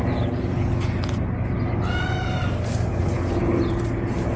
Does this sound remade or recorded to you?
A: recorded